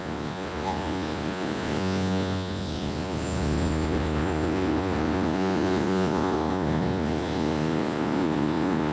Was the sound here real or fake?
fake